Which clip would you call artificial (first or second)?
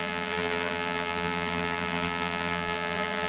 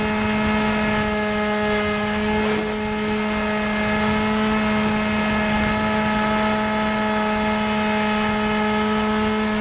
first